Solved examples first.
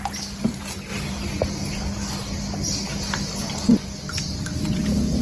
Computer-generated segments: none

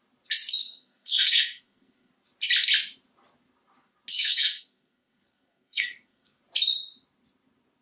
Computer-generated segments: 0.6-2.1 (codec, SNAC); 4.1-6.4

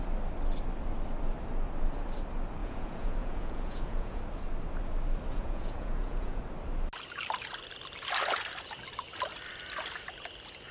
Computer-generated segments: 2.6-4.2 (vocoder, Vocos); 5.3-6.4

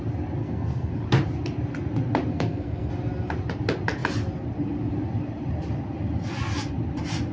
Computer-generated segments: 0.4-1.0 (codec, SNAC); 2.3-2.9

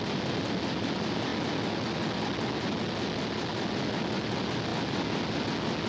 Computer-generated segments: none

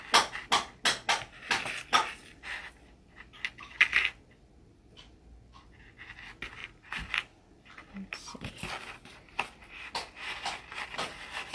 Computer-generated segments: 6.6-7.1 (vocoder, BigVGAN v2)

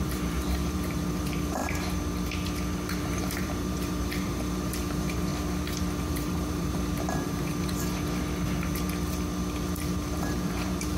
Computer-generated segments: 0.0-1.6 (vocoder, BigVGAN v2); 3.0-5.3; 6.0-7.5; 10.1-11.0